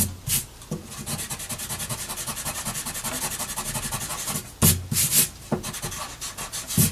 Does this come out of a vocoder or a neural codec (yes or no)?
no